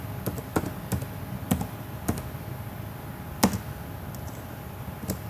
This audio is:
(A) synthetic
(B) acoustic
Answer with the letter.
B